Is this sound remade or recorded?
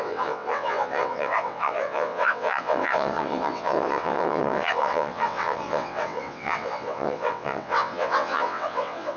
remade